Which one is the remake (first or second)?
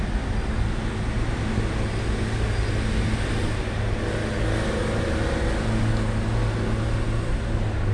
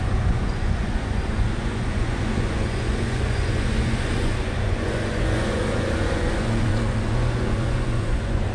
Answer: second